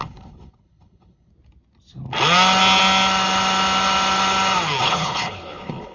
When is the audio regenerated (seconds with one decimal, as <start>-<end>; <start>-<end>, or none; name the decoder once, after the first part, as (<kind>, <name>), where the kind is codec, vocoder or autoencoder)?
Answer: 0.0-1.3 (codec, HILCodec); 4.8-5.9

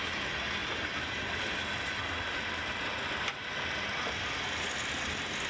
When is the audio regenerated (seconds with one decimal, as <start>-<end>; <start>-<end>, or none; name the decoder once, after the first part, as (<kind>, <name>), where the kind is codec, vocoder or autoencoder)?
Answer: none

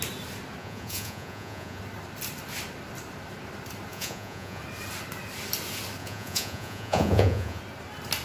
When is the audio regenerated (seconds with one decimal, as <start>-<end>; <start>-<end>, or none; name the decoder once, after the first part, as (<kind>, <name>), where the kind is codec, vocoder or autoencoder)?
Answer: 0.6-1.8 (vocoder, Vocos); 3.9-4.6; 6.0-7.6

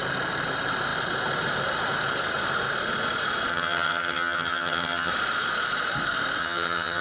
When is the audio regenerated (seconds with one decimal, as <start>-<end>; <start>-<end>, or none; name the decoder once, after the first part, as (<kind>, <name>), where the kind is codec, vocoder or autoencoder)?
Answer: 3.5-5.1 (vocoder, HiFi-GAN); 6.4-7.0

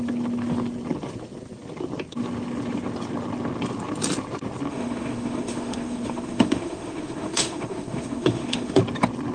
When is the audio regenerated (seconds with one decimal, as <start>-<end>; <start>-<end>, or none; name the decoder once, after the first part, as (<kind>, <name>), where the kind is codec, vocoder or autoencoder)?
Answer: 4.7-8.8 (autoencoder, DAC-VAE)

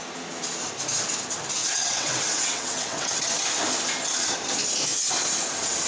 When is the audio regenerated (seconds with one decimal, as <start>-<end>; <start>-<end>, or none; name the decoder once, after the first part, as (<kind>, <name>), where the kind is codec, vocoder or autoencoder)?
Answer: 1.6-3.2 (vocoder, WaveNeXt)